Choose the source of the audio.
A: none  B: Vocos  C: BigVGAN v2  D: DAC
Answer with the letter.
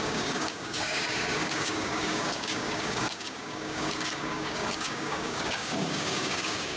D